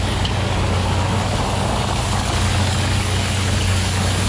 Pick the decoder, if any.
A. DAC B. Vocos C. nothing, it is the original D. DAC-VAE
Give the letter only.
A